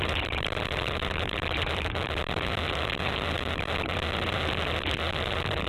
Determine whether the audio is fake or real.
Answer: fake